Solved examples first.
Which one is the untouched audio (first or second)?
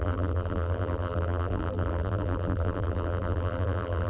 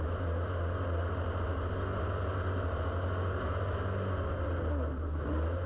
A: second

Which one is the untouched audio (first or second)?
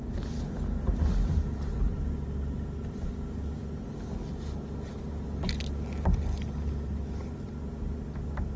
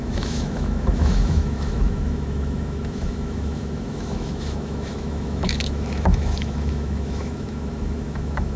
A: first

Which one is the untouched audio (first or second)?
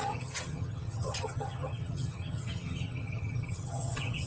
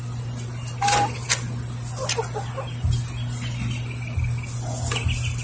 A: second